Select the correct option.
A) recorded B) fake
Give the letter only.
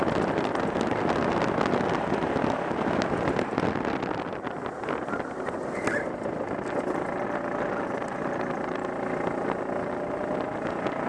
A